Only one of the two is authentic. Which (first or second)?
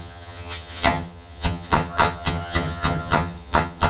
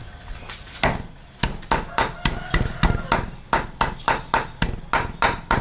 second